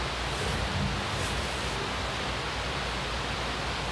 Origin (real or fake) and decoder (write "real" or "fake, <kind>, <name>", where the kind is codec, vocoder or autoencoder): real